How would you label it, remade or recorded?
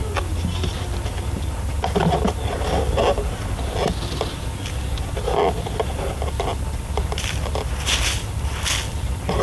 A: recorded